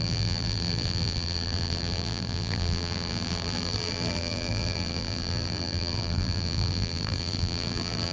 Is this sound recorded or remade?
remade